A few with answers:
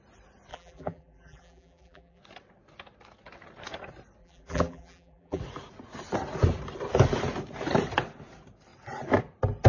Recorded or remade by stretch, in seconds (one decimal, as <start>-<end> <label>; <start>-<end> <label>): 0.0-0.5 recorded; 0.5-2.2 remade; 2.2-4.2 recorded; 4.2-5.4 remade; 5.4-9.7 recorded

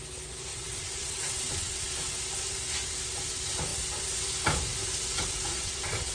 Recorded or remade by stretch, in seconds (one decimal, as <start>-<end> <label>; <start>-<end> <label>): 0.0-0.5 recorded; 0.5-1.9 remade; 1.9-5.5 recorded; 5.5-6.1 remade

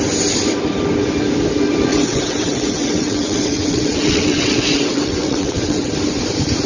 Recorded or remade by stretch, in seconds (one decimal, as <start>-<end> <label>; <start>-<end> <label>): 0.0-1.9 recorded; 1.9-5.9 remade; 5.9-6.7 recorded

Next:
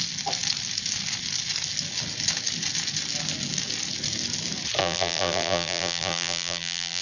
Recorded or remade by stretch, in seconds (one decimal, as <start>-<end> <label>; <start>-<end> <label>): 0.0-4.8 recorded; 4.8-7.0 remade

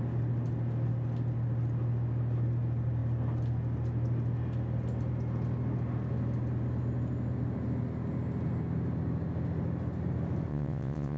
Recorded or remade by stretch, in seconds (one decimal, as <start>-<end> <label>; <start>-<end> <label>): 0.0-10.5 recorded; 10.5-11.2 remade

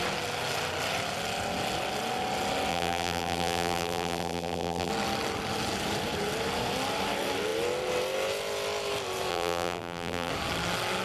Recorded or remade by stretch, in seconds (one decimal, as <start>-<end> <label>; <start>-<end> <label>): 0.0-2.7 recorded; 2.7-4.9 remade; 4.9-9.3 recorded; 9.3-10.3 remade; 10.3-11.0 recorded

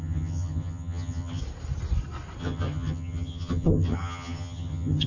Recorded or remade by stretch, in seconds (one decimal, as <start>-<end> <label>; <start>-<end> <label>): 0.0-1.4 remade; 1.4-2.4 recorded; 2.4-5.1 remade